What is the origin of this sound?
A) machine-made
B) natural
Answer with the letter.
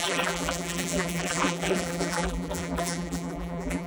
A